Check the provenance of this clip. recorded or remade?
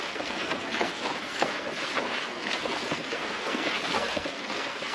remade